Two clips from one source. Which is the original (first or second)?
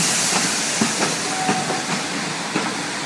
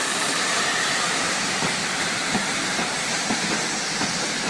first